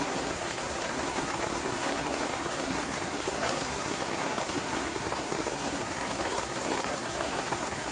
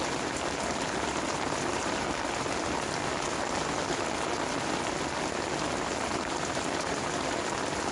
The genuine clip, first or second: second